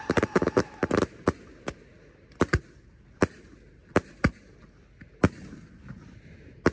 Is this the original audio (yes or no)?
yes